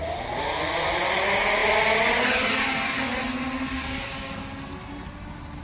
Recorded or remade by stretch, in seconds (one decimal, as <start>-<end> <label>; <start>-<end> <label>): 0.0-5.6 recorded